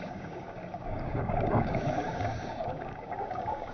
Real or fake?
fake